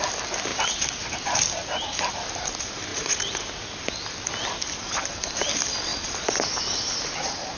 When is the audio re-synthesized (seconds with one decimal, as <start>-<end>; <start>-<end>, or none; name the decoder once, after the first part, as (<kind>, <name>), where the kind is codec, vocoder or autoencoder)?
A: 2.9-3.4 (vocoder, Vocos)